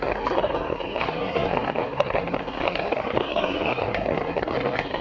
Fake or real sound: fake